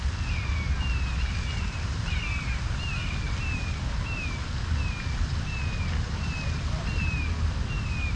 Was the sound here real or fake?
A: real